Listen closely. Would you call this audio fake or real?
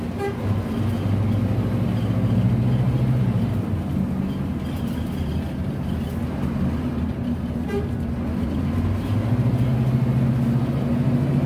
real